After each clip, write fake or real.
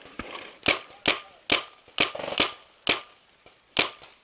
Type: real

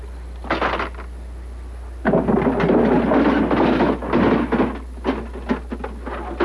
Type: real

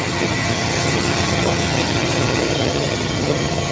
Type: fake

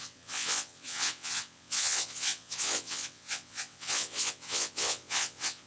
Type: fake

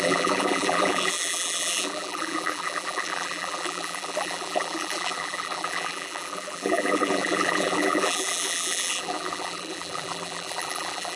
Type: fake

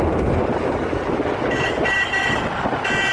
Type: real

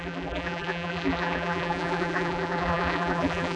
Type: fake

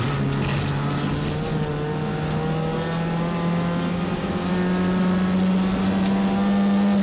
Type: real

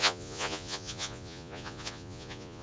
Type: fake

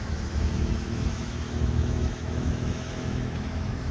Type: fake